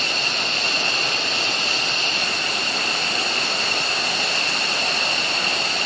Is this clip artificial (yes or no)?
no